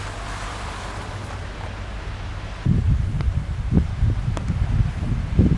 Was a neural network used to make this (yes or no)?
no